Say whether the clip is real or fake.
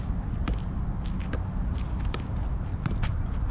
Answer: fake